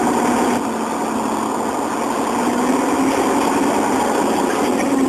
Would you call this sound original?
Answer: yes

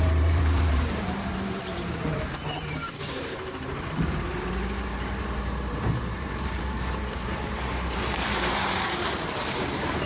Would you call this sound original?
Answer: no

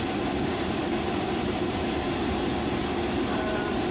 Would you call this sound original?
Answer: no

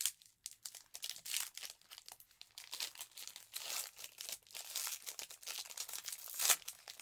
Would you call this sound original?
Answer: yes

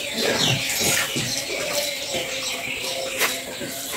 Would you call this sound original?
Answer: yes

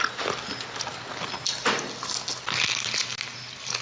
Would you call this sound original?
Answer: yes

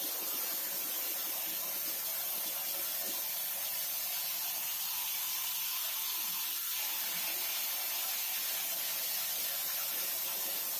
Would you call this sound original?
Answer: yes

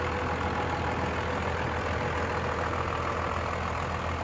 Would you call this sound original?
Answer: yes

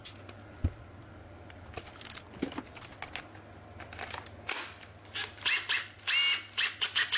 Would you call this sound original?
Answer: yes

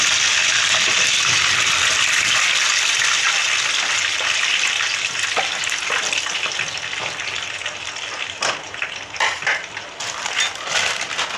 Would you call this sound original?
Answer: yes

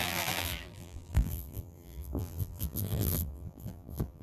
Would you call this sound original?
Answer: no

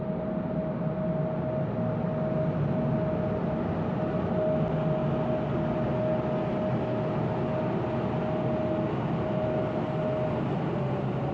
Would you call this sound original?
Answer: yes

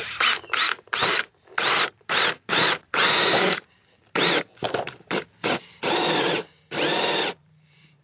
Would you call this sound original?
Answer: no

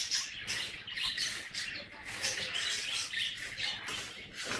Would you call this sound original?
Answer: yes